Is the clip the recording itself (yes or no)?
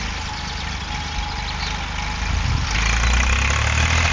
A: yes